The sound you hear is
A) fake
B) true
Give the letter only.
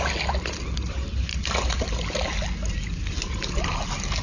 B